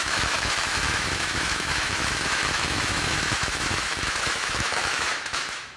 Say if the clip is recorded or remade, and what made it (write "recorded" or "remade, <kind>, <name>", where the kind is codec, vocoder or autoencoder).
remade, autoencoder, DAC-VAE